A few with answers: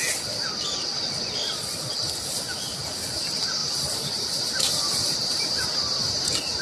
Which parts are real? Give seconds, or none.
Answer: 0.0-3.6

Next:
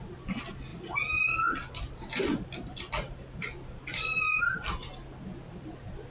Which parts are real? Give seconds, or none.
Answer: 0.0-6.1